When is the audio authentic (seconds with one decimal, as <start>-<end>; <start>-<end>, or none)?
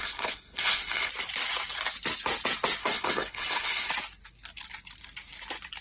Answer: 1.1-2.8; 3.9-5.8